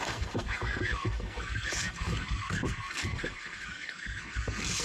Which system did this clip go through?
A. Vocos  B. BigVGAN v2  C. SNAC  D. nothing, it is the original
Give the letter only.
C